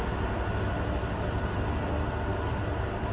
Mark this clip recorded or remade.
recorded